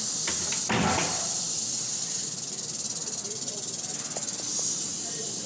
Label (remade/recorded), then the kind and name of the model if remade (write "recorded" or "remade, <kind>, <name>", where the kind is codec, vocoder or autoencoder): recorded